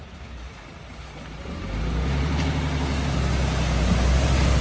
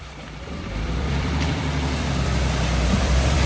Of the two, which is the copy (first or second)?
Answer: second